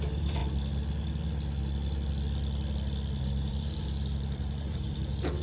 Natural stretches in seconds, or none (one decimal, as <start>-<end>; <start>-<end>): 0.4-3.2